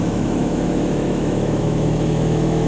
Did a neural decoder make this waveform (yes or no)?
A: yes